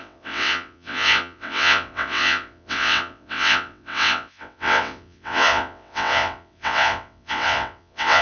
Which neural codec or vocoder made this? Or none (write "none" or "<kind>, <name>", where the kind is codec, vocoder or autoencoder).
vocoder, WaveNeXt